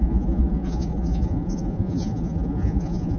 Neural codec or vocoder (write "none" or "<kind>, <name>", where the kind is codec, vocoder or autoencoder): vocoder, Vocos